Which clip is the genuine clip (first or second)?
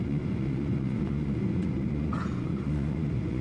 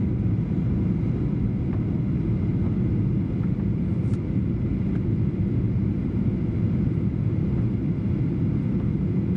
second